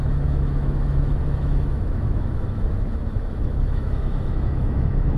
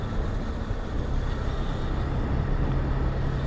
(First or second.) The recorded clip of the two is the second